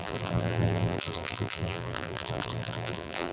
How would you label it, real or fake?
fake